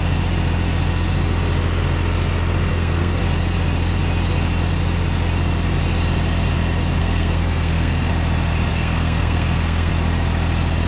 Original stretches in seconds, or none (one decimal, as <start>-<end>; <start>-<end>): 0.0-2.7; 3.2-7.0; 8.1-8.7; 9.9-10.9